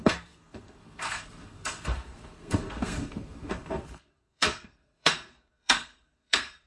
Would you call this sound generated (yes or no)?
yes